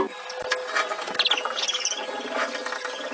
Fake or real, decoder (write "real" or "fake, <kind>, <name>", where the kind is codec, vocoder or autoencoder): real